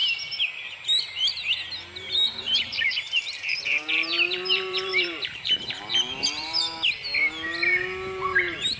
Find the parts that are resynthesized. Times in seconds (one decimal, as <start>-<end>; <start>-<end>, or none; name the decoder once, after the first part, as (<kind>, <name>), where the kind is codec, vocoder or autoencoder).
2.3-6.6 (vocoder, BigVGAN v2); 8.2-8.8